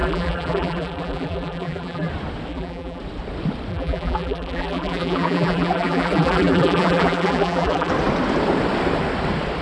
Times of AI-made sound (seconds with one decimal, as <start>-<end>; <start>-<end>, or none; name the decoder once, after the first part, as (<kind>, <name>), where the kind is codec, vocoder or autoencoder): 0.0-2.1 (vocoder, BigVGAN v2); 2.5-3.0; 3.7-7.9